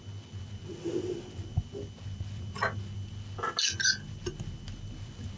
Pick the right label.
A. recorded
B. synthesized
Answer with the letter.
A